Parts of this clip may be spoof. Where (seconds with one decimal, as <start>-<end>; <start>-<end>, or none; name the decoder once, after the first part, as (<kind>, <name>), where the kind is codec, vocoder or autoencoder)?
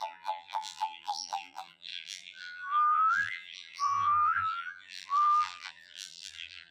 0.0-6.7 (vocoder, BigVGAN v2)